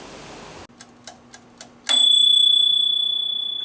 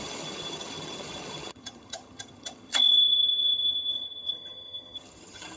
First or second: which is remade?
second